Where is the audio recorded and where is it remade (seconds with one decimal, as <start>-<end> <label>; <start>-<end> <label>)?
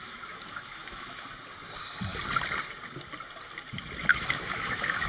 0.0-1.2 remade; 1.2-4.1 recorded; 4.1-5.1 remade